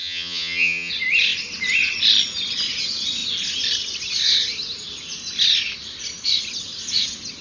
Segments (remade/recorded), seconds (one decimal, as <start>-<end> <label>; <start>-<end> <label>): 0.0-0.9 remade; 0.9-7.4 recorded